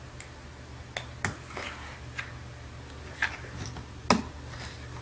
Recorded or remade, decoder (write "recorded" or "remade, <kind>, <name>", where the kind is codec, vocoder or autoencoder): recorded